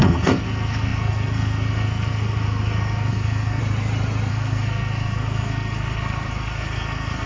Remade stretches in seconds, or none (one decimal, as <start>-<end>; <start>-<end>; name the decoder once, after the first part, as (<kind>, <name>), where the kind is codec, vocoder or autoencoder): 0.0-3.6 (codec, SNAC); 4.3-7.3